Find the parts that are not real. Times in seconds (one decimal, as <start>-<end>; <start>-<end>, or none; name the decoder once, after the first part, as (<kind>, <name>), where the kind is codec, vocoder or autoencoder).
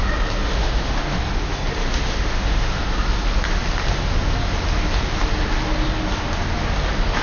0.4-1.2 (autoencoder, DAC-VAE); 1.8-2.8